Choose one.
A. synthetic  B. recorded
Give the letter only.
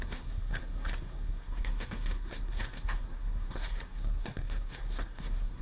A